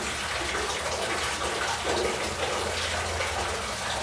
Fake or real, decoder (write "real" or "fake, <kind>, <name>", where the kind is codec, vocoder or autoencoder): real